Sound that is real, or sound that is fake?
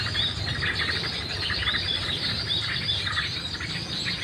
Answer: real